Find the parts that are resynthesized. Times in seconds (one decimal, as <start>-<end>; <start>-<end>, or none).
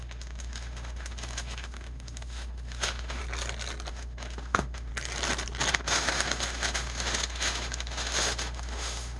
0.0-3.2; 3.9-4.9; 5.7-9.2